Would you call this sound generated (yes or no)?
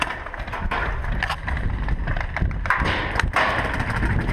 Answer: no